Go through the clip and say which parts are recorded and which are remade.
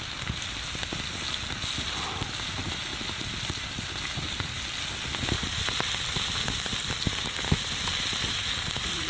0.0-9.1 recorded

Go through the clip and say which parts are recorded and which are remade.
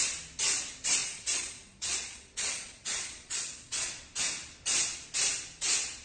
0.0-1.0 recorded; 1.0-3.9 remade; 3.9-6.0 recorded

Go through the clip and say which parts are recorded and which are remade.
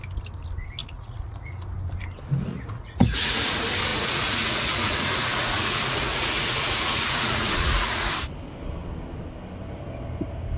0.0-0.8 recorded; 0.8-1.6 remade; 1.6-2.5 recorded; 2.5-3.5 remade; 3.5-3.9 recorded; 3.9-8.1 remade; 8.1-10.6 recorded